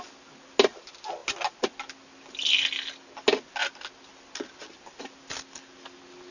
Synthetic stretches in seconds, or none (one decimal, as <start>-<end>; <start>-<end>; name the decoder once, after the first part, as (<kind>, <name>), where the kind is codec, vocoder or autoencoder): none